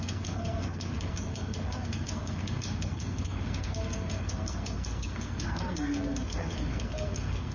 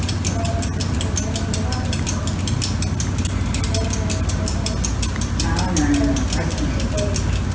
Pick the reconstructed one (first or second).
first